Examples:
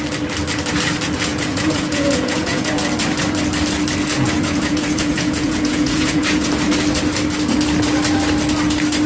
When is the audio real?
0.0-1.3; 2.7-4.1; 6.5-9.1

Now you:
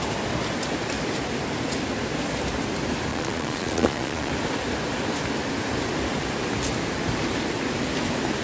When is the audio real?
0.0-3.1; 4.3-8.4

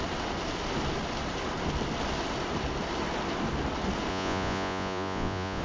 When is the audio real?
0.0-4.1

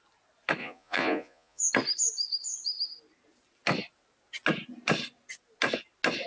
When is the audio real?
0.0-0.6; 1.7-6.3

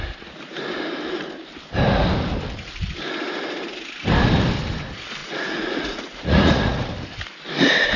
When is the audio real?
0.0-5.2; 6.9-8.0

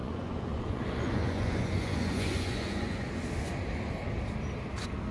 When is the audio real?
3.1-5.1

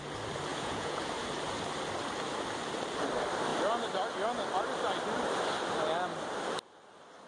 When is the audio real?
0.0-0.5; 1.0-7.3